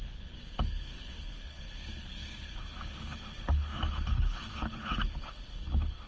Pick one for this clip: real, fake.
fake